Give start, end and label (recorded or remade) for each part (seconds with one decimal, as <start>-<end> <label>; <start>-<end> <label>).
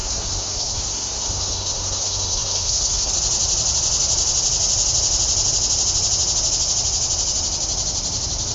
0.0-3.1 remade; 3.1-8.5 recorded